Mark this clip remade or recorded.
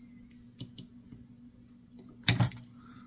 recorded